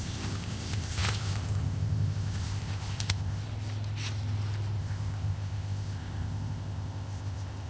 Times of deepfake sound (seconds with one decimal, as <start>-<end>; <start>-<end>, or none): 0.0-3.4; 4.8-7.7